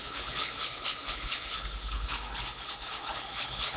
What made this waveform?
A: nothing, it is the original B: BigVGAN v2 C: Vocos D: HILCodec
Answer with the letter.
D